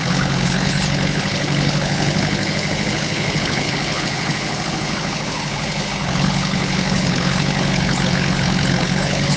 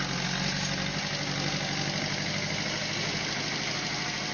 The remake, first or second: first